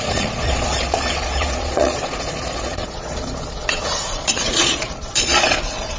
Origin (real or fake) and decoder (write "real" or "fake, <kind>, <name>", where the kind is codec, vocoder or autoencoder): fake, vocoder, Vocos